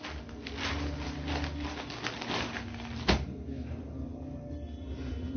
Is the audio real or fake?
real